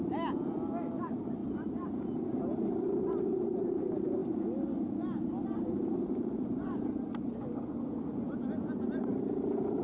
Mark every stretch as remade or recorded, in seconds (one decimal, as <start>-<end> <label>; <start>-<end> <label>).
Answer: 0.0-9.8 recorded